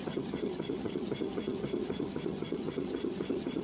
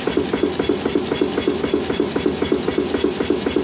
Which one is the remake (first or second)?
first